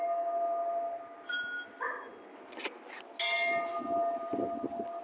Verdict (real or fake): real